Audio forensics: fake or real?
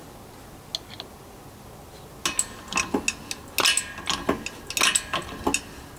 real